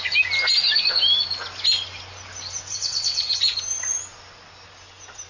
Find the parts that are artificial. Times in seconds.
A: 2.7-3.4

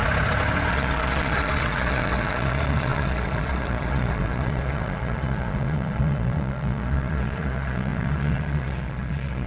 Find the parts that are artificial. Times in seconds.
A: 0.7-9.5

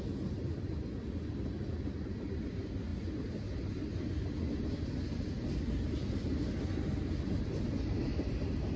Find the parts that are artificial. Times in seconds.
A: none

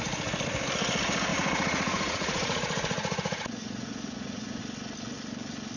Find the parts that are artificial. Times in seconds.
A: 1.3-4.6

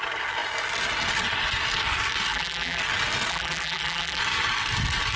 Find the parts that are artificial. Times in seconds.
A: 2.3-2.8; 3.3-4.2